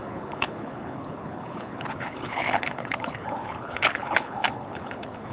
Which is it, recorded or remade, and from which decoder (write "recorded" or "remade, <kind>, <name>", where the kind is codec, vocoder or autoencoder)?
remade, codec, HILCodec